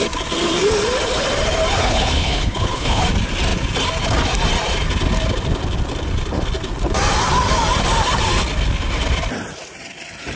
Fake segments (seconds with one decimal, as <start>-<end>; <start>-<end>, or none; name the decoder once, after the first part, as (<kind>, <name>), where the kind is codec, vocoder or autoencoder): 1.8-3.0 (codec, HILCodec)